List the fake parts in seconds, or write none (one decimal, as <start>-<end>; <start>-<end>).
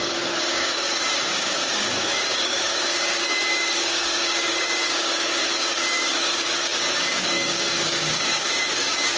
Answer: 0.0-9.2